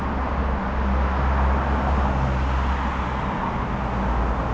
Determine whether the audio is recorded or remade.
recorded